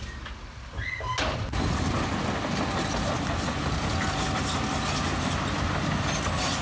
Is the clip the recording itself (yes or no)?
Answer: yes